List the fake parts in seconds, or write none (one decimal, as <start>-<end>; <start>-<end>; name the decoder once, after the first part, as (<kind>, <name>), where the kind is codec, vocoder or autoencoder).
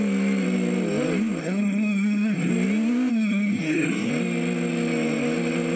1.4-2.5 (codec, SNAC); 3.1-4.1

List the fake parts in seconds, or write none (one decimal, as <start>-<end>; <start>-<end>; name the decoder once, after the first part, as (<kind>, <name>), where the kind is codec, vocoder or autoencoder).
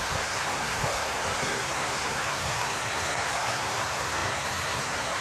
0.0-5.2 (codec, SNAC)